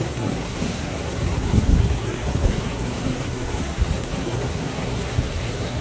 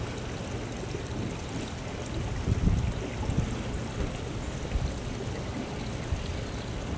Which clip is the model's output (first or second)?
first